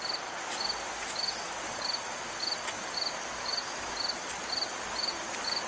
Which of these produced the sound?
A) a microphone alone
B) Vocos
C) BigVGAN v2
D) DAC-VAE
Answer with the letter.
A